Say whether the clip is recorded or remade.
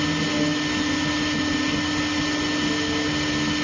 recorded